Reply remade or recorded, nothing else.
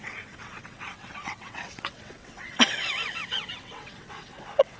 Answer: remade